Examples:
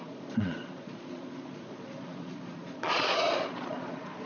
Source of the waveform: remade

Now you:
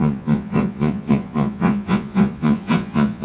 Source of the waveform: remade